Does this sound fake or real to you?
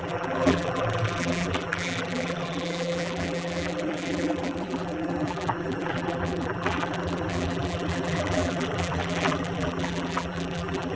fake